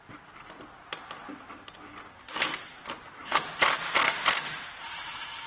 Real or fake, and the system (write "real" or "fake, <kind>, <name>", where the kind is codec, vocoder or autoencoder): real